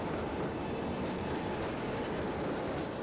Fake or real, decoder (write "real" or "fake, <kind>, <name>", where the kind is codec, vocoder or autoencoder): real